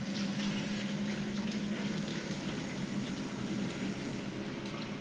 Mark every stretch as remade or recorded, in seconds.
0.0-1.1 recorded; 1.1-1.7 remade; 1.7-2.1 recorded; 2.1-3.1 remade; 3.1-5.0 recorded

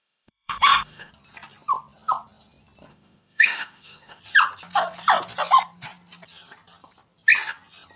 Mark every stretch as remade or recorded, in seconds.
0.0-1.1 remade; 1.1-2.9 recorded; 2.9-4.2 remade; 4.2-8.0 recorded

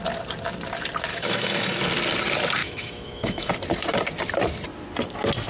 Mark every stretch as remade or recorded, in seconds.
0.0-1.1 recorded; 1.1-1.8 remade; 1.8-2.6 recorded; 2.6-3.5 remade; 3.5-5.5 recorded

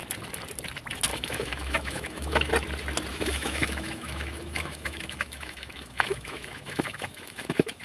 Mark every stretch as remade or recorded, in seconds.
0.0-1.1 recorded; 1.1-2.5 remade; 2.5-3.1 recorded; 3.1-7.8 remade

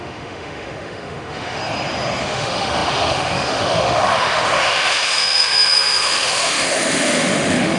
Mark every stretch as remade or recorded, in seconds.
0.0-1.6 remade; 1.6-2.2 recorded; 2.2-7.8 remade

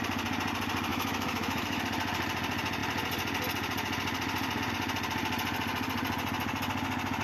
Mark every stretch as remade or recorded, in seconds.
0.0-0.9 recorded; 0.9-1.8 remade; 1.8-7.2 recorded